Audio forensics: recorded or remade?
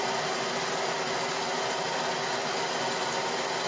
recorded